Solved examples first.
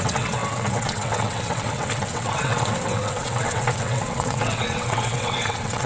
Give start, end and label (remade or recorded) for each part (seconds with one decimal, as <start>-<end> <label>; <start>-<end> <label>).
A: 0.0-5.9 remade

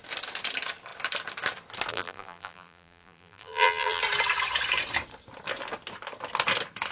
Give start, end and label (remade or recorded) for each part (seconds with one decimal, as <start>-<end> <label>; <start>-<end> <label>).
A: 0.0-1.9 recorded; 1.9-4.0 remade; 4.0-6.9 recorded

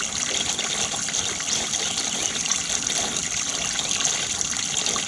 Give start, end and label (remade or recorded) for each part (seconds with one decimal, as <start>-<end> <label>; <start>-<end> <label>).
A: 0.0-2.5 remade; 2.5-3.0 recorded; 3.0-3.5 remade; 3.5-4.1 recorded; 4.1-5.1 remade

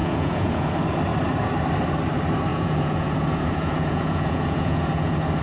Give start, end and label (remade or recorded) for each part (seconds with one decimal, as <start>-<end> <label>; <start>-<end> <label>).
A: 0.0-0.7 remade; 0.7-2.5 recorded; 2.5-5.4 remade

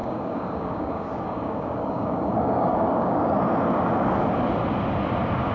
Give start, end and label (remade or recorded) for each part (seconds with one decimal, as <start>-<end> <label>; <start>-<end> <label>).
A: 0.0-3.3 remade; 3.3-5.5 recorded

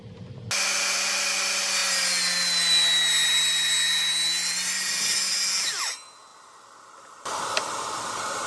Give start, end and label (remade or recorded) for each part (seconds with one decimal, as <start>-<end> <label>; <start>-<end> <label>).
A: 0.0-8.5 recorded